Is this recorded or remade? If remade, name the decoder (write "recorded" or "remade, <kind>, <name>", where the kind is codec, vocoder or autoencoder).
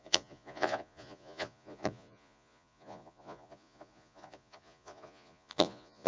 remade, vocoder, Vocos